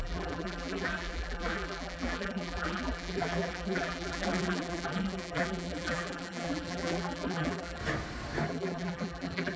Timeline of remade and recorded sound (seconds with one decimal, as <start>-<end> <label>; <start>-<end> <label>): 0.0-7.8 remade; 7.8-8.5 recorded; 8.5-9.6 remade